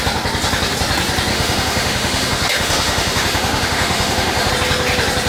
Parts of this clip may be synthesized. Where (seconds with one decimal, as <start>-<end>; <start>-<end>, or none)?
1.3-4.5